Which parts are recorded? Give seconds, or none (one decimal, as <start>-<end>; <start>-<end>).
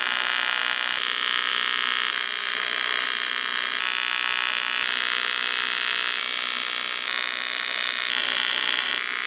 0.0-2.4; 3.3-8.2; 8.9-9.3